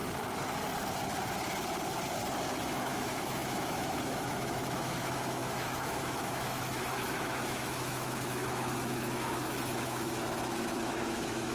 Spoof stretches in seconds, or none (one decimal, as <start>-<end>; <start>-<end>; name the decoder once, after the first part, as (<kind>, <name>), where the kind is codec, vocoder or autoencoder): 2.6-11.5 (autoencoder, DAC-VAE)